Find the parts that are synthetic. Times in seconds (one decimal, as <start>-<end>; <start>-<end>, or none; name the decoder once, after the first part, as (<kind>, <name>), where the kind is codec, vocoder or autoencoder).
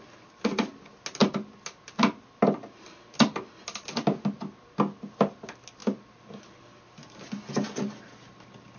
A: none